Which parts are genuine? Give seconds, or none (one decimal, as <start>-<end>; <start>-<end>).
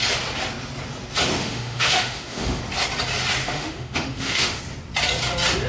0.0-1.4; 2.6-3.4; 4.6-5.7